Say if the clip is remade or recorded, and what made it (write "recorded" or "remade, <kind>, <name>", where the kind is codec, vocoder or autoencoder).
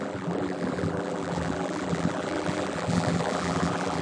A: remade, vocoder, BigVGAN v2